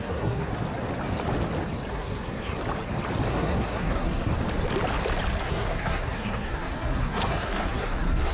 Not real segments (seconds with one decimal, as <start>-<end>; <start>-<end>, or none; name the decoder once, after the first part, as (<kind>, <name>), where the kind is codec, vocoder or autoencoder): 0.0-0.5 (codec, SNAC); 1.9-2.5; 3.3-4.3; 5.4-8.3